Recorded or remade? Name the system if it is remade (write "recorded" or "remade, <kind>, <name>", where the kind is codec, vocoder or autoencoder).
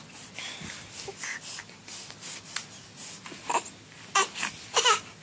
recorded